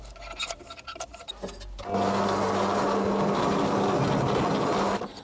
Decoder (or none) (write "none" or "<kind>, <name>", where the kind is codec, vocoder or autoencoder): none